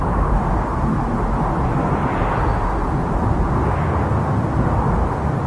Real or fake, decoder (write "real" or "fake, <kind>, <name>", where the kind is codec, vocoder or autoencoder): real